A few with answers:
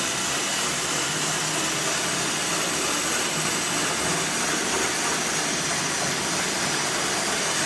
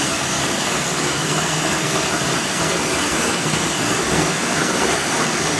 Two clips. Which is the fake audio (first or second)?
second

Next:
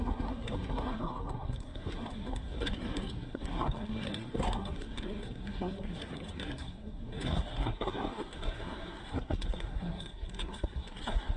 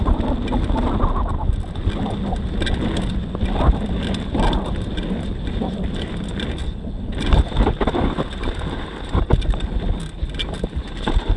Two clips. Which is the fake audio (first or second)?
first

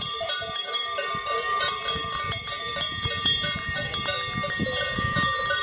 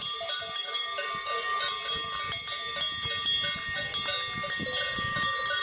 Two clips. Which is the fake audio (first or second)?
first